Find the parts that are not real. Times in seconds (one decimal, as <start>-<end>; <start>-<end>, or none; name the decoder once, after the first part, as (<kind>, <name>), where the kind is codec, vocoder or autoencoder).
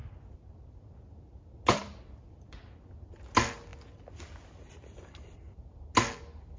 none